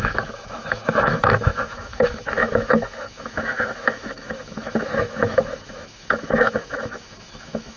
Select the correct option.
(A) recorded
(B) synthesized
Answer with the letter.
B